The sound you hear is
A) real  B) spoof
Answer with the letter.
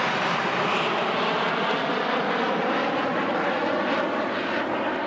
A